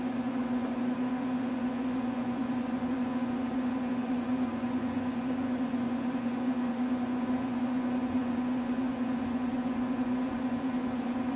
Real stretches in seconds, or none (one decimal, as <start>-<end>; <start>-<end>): none